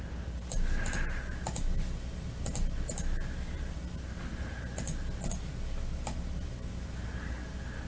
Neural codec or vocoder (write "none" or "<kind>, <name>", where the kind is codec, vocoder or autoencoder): none